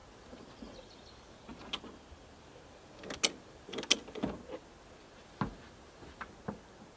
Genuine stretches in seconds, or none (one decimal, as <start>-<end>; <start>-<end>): 0.0-7.0